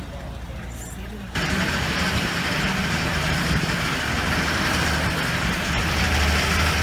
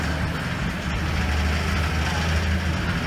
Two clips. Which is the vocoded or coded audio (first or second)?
first